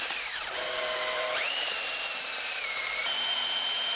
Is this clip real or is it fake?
fake